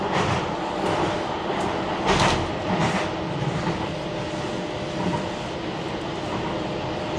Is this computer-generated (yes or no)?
no